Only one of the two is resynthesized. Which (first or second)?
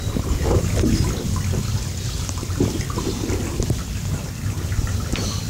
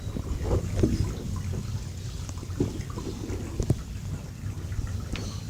first